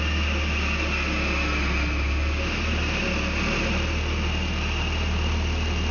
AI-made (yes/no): no